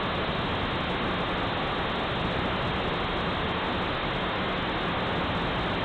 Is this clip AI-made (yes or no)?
no